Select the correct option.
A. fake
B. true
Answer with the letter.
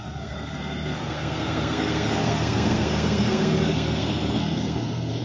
A